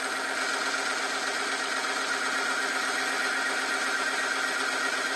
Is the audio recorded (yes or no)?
yes